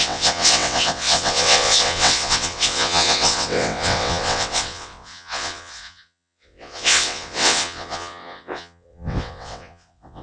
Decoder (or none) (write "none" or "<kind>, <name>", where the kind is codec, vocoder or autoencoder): vocoder, WaveNeXt